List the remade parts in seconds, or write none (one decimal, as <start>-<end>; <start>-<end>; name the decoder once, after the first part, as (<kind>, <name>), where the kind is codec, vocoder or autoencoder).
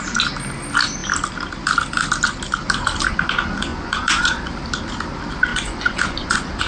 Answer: 3.7-4.5 (vocoder, Vocos); 5.5-6.7